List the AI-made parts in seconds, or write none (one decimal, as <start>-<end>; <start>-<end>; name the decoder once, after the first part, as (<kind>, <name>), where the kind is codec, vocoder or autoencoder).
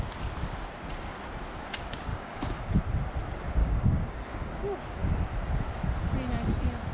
2.1-2.6 (codec, DAC); 3.6-4.5